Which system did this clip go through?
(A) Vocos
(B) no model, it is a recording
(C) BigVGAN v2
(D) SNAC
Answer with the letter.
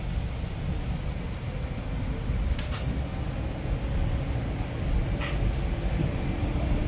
B